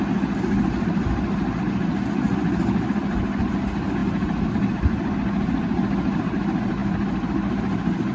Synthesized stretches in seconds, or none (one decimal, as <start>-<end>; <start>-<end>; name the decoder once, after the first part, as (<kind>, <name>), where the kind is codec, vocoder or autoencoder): none